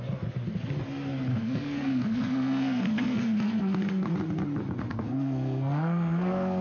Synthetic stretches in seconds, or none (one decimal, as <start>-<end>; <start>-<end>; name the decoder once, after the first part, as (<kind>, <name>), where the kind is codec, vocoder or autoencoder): 1.3-4.1 (codec, SNAC); 4.9-6.6